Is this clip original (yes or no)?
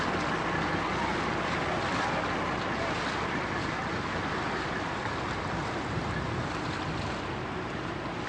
yes